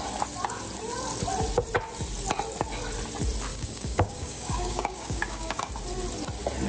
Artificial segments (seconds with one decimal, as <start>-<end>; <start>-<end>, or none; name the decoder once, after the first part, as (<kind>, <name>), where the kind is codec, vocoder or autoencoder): 3.5-5.7 (codec, DAC)